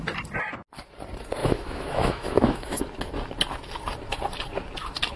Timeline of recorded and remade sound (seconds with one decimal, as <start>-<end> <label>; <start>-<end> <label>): 0.0-1.4 recorded; 1.4-2.8 remade; 2.8-5.2 recorded